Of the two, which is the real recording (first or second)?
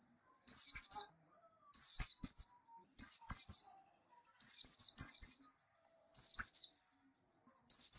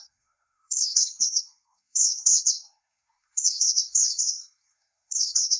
first